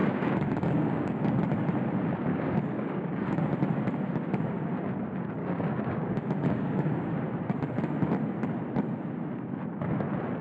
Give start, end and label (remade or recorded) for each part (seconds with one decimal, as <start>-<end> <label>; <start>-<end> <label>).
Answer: 0.0-1.4 remade; 1.4-2.3 recorded; 2.3-3.4 remade; 3.4-5.4 recorded; 5.4-7.1 remade; 7.1-10.4 recorded